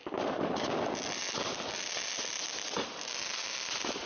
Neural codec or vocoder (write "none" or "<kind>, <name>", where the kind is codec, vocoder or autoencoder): none